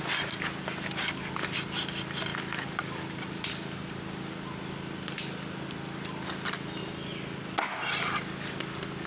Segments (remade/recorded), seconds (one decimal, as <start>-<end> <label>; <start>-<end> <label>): 0.0-9.1 recorded